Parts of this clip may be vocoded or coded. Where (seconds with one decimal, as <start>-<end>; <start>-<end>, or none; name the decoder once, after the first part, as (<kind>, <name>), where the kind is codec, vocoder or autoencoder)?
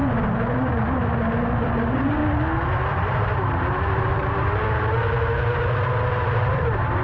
1.5-2.2 (vocoder, BigVGAN v2); 2.9-4.6; 6.0-7.0